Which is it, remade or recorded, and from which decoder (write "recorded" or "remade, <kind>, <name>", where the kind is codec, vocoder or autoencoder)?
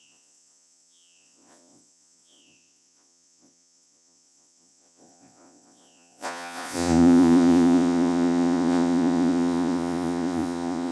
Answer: remade, vocoder, Vocos